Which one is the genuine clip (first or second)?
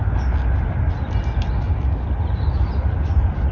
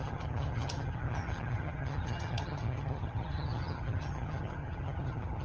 first